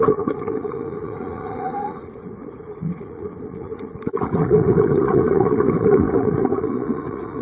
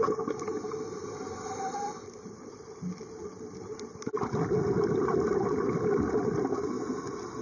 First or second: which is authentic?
second